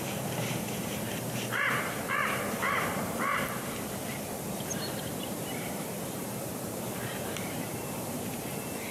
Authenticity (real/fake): fake